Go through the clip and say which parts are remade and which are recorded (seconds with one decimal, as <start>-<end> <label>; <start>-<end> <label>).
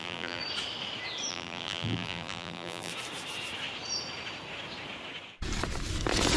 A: 0.0-0.4 remade; 0.4-1.3 recorded; 1.3-2.9 remade; 2.9-6.4 recorded